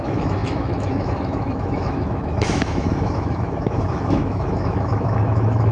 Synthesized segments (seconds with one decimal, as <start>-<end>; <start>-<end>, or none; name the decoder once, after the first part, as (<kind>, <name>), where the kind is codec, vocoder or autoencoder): 0.0-5.7 (autoencoder, DAC-VAE)